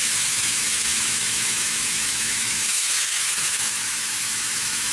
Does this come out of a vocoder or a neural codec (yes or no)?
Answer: yes